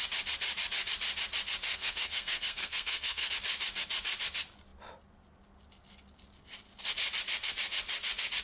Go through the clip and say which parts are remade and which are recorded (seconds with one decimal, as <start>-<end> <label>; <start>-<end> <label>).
0.0-1.7 recorded; 1.7-3.3 remade; 3.3-8.4 recorded

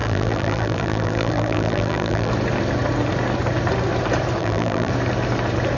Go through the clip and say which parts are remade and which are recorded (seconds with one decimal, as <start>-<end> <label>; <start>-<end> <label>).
0.0-2.3 remade; 2.3-4.4 recorded; 4.4-4.9 remade; 4.9-5.8 recorded

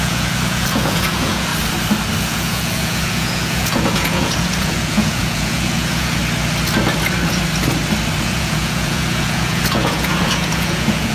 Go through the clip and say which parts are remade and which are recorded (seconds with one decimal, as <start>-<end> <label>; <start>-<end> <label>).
0.0-1.5 remade; 1.5-2.2 recorded; 2.2-6.2 remade; 6.2-8.2 recorded; 8.2-11.1 remade

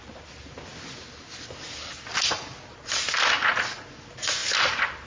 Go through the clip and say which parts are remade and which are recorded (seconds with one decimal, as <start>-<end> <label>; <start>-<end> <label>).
0.0-5.1 recorded

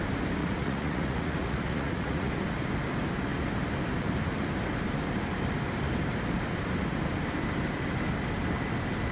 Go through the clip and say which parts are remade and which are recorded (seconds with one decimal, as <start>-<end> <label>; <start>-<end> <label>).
0.0-0.4 recorded; 0.4-2.3 remade; 2.3-9.1 recorded